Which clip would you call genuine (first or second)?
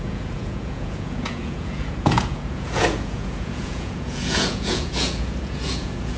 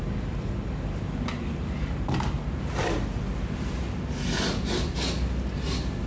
second